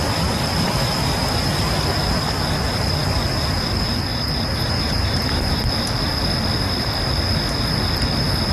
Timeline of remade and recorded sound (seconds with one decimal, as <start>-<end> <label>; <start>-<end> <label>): 0.0-4.1 recorded; 4.1-5.5 remade; 5.5-8.5 recorded